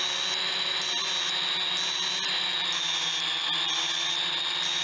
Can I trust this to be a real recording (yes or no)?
yes